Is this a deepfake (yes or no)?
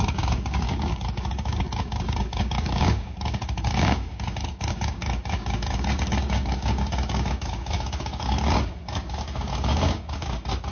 yes